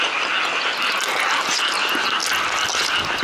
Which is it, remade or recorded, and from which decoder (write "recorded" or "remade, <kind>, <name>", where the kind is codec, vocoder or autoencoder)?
recorded